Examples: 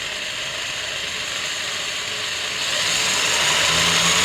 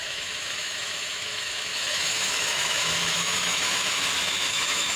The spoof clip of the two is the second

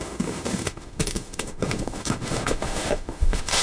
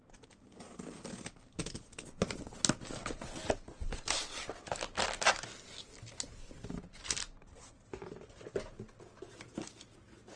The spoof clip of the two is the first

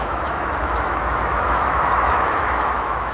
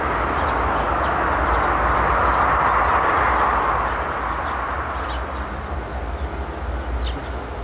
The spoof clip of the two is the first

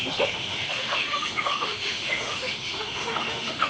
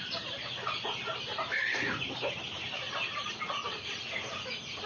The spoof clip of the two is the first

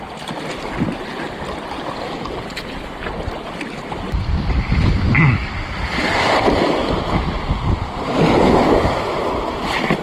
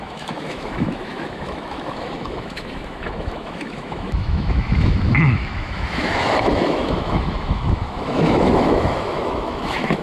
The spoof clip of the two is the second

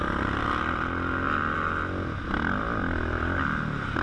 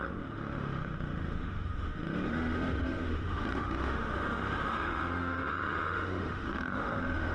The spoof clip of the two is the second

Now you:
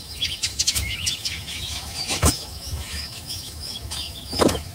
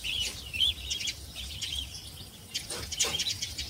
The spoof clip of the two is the first